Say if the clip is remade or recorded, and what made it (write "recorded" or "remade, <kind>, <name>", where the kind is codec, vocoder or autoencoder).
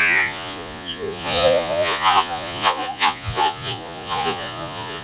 remade, vocoder, Vocos